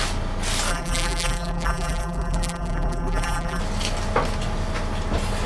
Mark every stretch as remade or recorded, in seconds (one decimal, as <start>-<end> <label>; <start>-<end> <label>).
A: 0.0-0.7 recorded; 0.7-3.6 remade; 3.6-5.5 recorded